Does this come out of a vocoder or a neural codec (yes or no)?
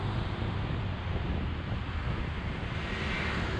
no